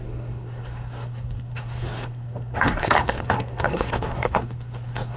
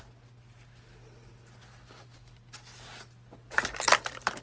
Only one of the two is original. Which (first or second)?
second